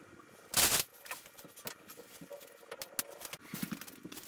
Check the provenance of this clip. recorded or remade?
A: recorded